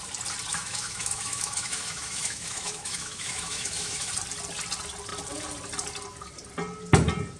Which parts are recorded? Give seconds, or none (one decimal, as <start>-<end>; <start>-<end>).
0.0-0.5; 4.1-7.4